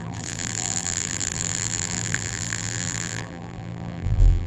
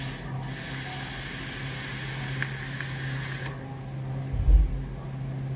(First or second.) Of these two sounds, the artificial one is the first